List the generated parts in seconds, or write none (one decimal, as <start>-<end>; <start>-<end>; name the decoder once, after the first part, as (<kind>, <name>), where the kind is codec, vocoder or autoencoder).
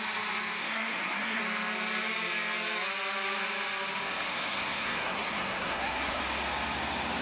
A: 0.6-1.4 (codec, SNAC); 4.3-6.2